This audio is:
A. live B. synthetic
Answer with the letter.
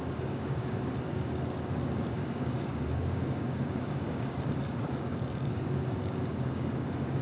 B